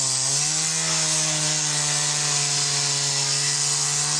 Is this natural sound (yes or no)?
yes